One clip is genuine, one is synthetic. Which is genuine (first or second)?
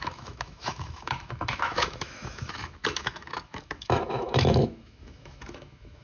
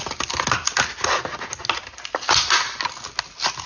second